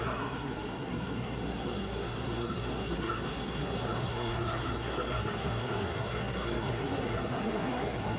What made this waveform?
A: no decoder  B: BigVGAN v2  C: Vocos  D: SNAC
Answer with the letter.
D